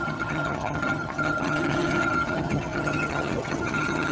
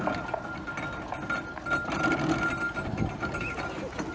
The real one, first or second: second